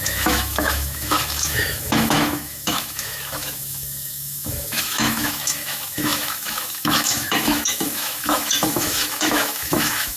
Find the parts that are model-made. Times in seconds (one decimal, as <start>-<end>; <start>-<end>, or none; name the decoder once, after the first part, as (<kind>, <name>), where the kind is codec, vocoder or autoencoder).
0.0-10.2 (autoencoder, DAC-VAE)